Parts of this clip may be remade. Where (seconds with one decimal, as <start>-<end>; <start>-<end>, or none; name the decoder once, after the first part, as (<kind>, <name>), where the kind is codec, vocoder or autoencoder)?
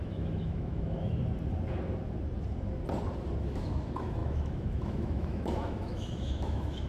0.0-1.2 (autoencoder, DAC-VAE); 3.4-6.9